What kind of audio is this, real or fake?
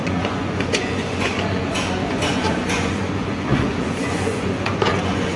fake